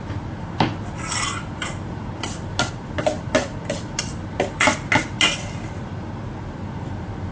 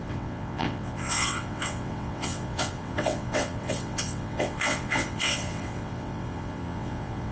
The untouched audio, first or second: first